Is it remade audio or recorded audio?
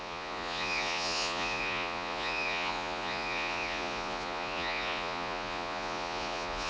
remade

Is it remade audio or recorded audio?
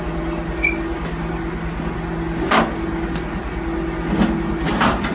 recorded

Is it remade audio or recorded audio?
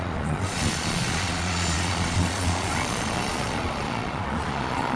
remade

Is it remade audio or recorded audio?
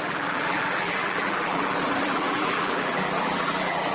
remade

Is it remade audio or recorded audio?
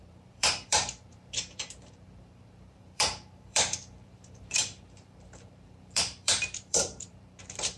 remade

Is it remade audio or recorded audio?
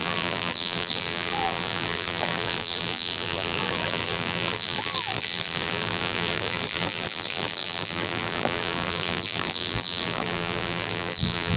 remade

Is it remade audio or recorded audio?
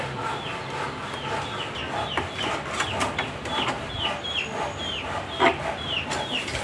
recorded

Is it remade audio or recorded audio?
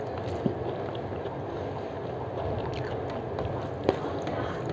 recorded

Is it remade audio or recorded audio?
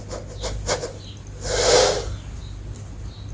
recorded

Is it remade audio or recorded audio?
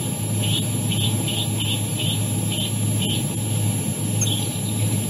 recorded